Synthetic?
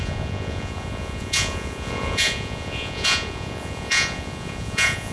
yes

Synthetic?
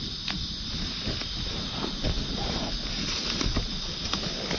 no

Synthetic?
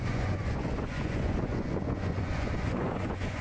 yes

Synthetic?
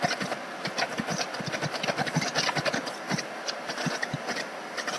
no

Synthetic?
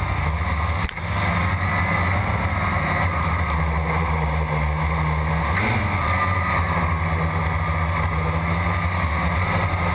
no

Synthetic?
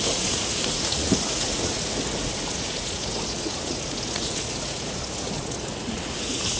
yes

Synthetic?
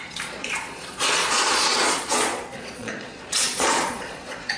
yes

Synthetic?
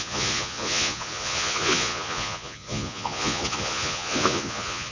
yes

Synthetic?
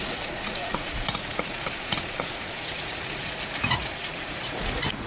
yes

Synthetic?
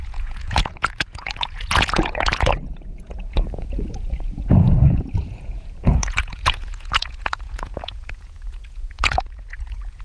yes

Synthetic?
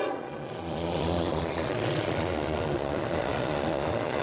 yes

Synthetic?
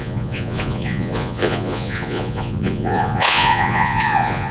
yes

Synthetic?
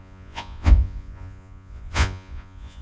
yes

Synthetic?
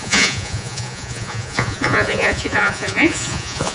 yes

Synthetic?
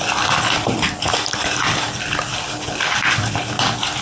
no